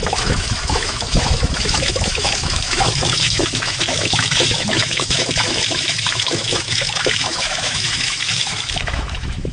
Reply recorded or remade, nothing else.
remade